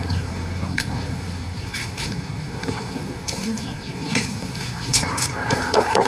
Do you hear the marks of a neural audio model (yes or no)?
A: yes